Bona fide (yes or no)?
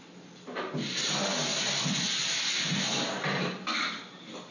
yes